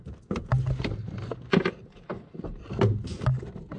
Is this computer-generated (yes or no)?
no